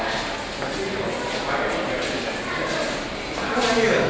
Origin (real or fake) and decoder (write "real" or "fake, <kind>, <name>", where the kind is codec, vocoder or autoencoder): real